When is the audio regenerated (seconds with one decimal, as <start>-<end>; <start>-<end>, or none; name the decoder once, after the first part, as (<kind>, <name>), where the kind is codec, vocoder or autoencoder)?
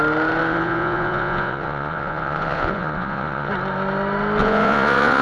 0.4-3.5 (vocoder, Vocos); 4.4-5.2